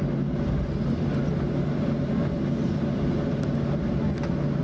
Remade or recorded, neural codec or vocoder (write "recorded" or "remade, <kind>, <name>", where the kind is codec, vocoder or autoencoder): recorded